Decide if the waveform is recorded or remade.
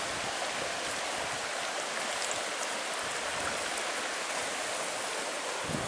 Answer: recorded